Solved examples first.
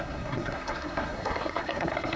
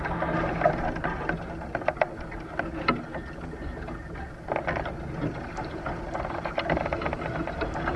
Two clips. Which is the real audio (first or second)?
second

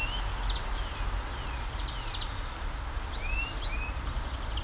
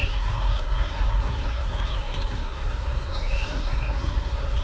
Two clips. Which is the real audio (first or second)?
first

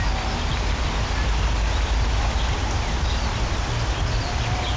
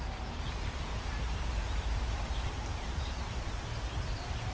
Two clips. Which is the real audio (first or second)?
first